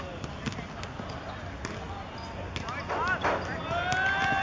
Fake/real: real